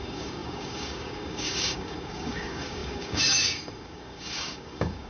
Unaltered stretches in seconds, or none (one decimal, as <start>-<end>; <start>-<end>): none